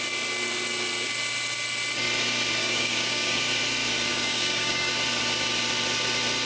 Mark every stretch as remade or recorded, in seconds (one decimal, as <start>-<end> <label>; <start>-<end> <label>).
0.0-2.6 recorded; 2.6-3.4 remade; 3.4-4.1 recorded; 4.1-4.9 remade; 4.9-6.5 recorded